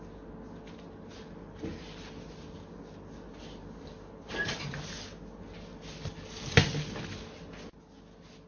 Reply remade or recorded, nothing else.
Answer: recorded